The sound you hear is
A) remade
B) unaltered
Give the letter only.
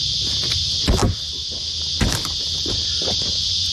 B